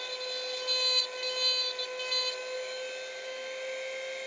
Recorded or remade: recorded